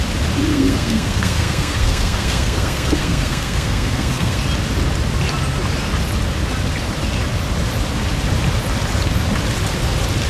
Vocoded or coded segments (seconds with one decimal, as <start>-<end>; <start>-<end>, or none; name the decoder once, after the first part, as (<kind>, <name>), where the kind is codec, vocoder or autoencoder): 0.5-4.4 (codec, SNAC)